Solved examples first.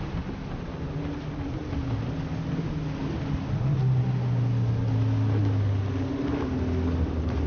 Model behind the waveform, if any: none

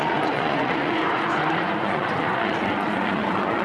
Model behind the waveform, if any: vocoder, Vocos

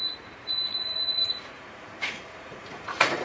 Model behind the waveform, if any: vocoder, Vocos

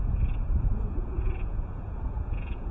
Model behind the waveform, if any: vocoder, Vocos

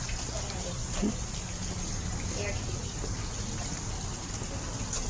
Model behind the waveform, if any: none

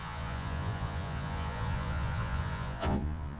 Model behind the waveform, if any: vocoder, Vocos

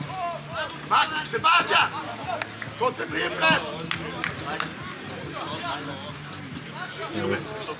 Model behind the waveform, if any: none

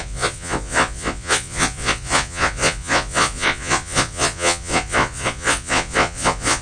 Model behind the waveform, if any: vocoder, Vocos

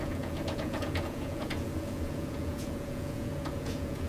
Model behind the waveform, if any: vocoder, Vocos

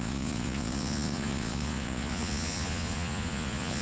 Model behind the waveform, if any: vocoder, Vocos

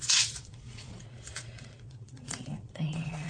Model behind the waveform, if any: vocoder, Vocos